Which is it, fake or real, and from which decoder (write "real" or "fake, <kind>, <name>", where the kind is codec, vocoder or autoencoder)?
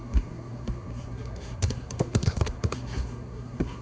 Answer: fake, codec, SNAC